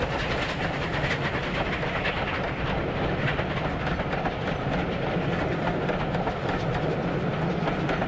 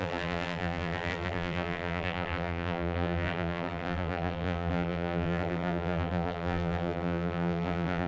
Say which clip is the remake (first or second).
second